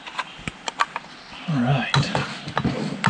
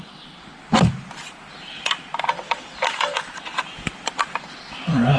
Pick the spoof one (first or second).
second